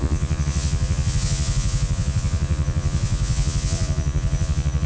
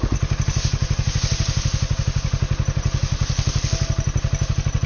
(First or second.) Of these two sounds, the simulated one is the first